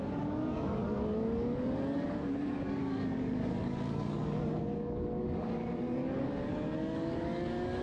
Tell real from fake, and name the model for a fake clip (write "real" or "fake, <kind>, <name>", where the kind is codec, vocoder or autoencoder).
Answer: fake, codec, DAC